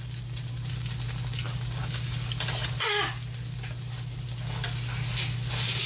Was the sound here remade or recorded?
recorded